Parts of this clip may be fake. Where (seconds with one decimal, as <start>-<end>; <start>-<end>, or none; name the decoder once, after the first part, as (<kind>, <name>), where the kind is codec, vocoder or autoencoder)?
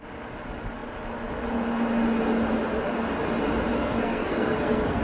3.7-5.0 (codec, SNAC)